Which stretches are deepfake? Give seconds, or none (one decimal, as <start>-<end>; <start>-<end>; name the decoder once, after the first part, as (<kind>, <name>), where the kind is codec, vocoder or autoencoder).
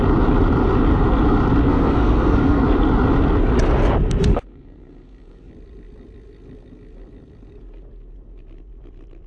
1.7-2.6 (codec, SNAC); 4.3-5.5